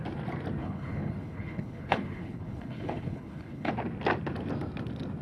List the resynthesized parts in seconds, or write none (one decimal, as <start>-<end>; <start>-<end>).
0.6-3.7